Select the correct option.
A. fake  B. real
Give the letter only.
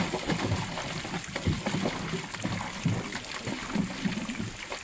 B